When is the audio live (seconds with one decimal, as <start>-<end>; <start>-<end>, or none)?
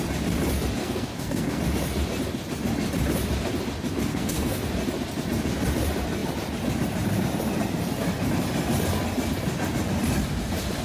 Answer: 0.0-0.8; 1.6-4.1; 4.6-10.8